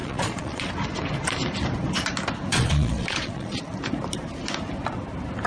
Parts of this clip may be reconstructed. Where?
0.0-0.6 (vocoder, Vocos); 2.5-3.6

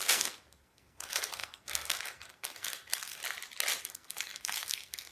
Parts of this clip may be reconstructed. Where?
0.0-3.2 (codec, SNAC); 3.8-5.1

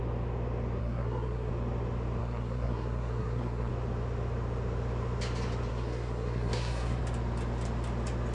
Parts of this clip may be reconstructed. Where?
0.8-1.5 (codec, SNAC); 2.2-3.7; 5.7-7.0

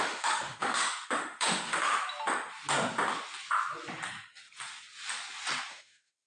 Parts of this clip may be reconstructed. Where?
0.0-1.9 (autoencoder, DAC-VAE); 5.7-6.3